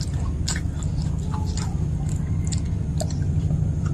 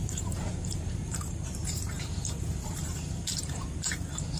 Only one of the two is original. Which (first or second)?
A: first